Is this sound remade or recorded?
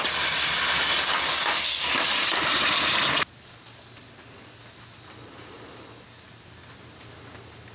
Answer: recorded